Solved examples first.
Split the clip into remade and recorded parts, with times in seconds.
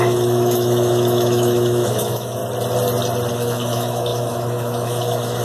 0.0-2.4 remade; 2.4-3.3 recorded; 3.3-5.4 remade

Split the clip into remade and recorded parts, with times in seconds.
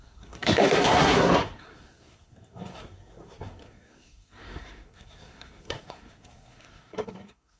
0.0-7.6 remade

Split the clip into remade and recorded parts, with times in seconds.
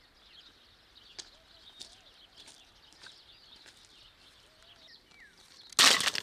0.0-6.2 recorded